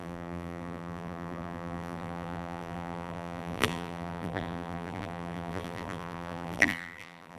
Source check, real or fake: fake